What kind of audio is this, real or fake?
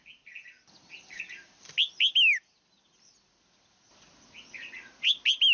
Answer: real